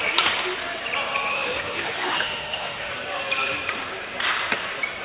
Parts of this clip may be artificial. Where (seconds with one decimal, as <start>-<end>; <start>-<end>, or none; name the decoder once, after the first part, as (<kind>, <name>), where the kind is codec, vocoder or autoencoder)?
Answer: 1.3-2.9 (autoencoder, DAC-VAE)